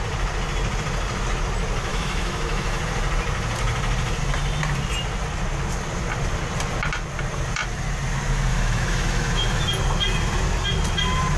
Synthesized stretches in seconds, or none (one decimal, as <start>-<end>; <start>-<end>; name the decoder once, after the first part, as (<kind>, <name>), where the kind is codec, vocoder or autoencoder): 1.9-2.8 (autoencoder, DAC-VAE); 8.5-9.6